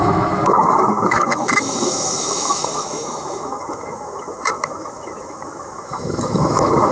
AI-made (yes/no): yes